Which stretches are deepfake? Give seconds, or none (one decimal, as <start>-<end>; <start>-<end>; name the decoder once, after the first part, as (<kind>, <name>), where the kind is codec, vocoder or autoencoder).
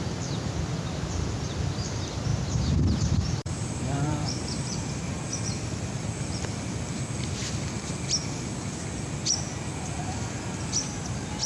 2.3-5.4 (vocoder, BigVGAN v2)